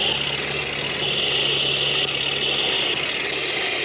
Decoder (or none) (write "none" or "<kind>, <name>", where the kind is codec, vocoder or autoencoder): none